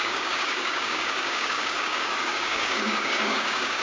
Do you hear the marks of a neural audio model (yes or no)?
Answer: yes